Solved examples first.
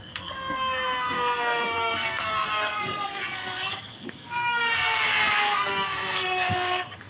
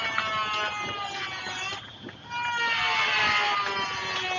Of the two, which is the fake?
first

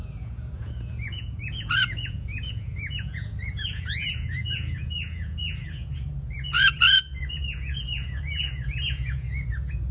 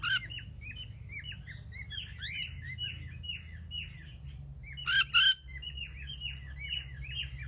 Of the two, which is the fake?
first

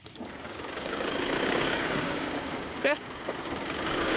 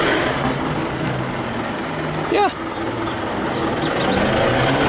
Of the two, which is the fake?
first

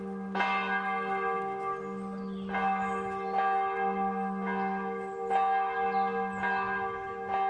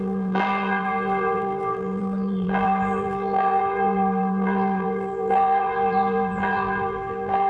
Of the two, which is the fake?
second